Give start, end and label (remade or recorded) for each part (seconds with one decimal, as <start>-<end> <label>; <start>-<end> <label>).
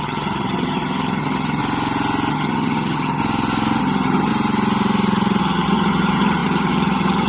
0.0-1.6 remade; 1.6-2.3 recorded; 2.3-3.2 remade; 3.2-3.8 recorded; 3.8-4.3 remade; 4.3-5.4 recorded; 5.4-7.3 remade